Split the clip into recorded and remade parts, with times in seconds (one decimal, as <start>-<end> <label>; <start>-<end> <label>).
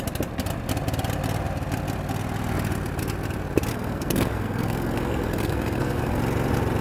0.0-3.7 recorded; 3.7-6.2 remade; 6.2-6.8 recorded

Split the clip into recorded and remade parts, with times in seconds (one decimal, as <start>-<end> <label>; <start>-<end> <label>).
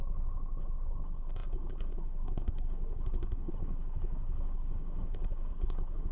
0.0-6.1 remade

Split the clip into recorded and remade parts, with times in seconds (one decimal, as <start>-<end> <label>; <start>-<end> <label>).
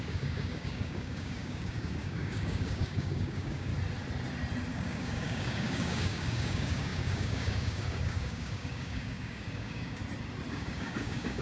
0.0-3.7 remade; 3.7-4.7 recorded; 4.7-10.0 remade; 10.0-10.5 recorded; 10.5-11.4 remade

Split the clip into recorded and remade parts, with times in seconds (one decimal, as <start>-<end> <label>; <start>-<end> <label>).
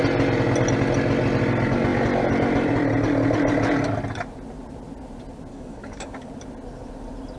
0.0-5.5 recorded; 5.5-6.3 remade; 6.3-7.4 recorded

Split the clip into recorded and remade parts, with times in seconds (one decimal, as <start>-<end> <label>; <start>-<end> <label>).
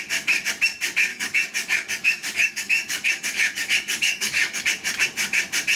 0.0-1.1 recorded; 1.1-4.6 remade; 4.6-5.8 recorded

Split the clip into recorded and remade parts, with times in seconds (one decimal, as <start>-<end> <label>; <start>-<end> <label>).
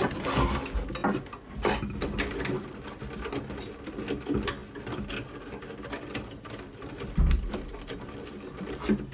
0.0-9.1 recorded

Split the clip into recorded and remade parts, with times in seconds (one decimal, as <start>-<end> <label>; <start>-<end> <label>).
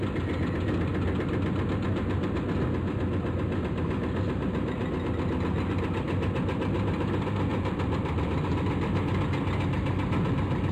0.0-7.5 recorded; 7.5-8.9 remade; 8.9-10.7 recorded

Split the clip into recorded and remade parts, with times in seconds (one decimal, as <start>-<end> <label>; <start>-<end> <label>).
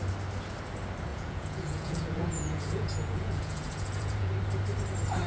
0.0-1.1 recorded; 1.1-4.3 remade; 4.3-5.3 recorded